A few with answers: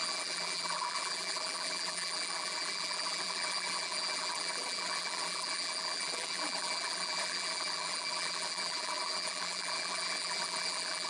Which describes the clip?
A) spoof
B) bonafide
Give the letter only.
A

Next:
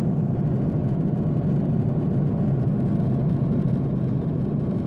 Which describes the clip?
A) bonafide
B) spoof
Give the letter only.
A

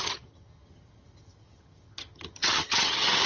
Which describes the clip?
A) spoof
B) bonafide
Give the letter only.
A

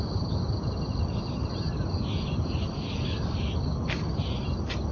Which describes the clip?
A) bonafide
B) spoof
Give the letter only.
A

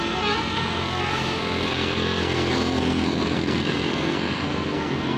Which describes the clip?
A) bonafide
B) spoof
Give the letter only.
B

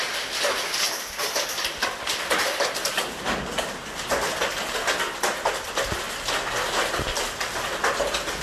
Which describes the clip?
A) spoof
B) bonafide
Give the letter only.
B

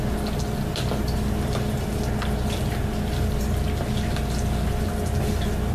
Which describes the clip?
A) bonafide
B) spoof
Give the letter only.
A